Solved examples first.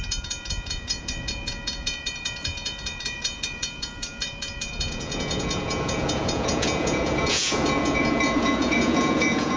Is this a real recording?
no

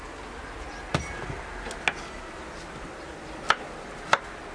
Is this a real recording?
yes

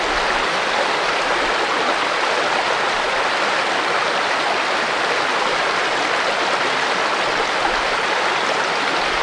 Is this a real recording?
yes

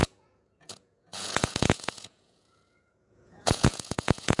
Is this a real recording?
no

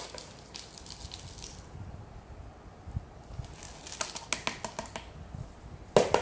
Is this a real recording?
yes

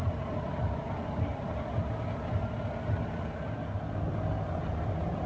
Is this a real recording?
yes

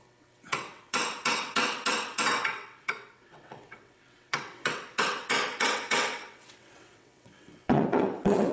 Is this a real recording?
no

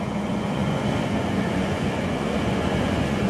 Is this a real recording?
no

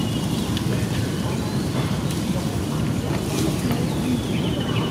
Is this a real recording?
no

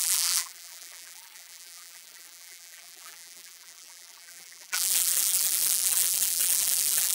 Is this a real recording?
no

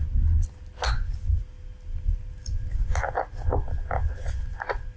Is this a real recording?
yes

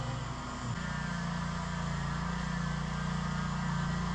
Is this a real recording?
yes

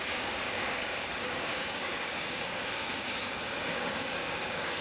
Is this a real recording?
no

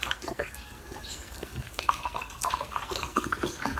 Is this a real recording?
no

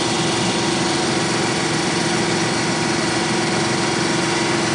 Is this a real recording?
yes